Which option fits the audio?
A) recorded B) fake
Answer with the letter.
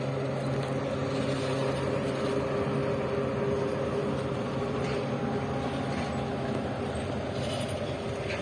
A